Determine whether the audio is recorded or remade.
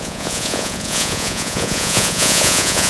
remade